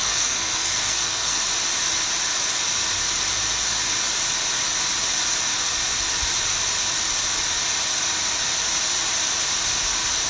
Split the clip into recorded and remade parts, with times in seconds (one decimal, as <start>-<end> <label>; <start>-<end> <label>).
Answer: 0.0-1.4 remade; 1.4-10.3 recorded

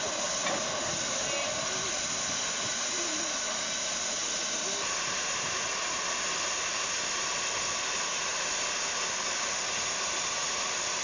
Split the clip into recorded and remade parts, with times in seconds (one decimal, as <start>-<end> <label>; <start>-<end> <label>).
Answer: 0.0-11.0 recorded

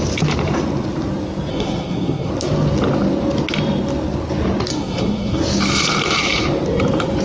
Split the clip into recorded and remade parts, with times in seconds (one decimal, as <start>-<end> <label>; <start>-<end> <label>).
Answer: 0.0-1.5 recorded; 1.5-2.3 remade; 2.3-4.7 recorded; 4.7-5.4 remade; 5.4-7.2 recorded

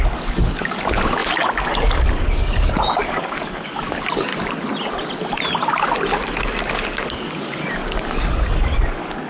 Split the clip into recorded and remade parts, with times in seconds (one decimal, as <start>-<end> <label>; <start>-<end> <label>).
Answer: 0.0-4.3 remade; 4.3-6.4 recorded; 6.4-9.3 remade

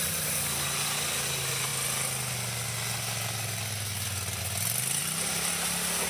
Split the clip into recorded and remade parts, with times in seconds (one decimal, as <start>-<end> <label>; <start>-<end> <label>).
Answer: 0.0-6.1 recorded